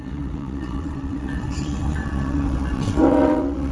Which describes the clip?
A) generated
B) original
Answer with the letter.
A